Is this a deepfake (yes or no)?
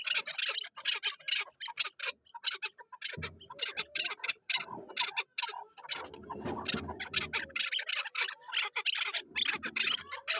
no